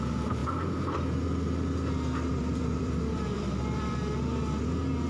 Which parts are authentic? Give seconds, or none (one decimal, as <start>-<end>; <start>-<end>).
0.0-0.4; 1.0-2.3; 4.0-5.1